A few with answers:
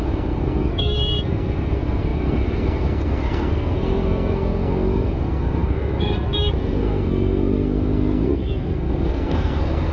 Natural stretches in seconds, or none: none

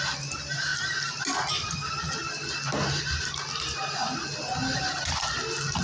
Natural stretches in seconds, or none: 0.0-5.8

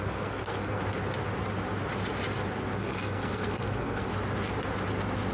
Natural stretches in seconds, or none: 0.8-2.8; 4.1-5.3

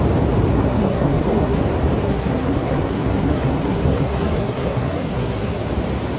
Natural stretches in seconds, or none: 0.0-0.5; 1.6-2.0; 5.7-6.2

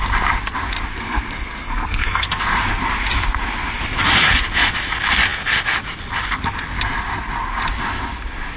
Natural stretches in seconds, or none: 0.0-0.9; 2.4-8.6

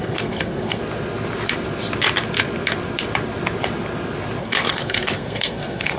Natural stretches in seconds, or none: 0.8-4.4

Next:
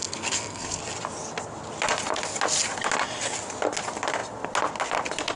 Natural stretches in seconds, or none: 0.8-5.4

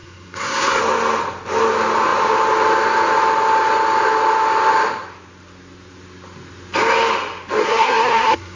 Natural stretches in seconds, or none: 0.8-7.6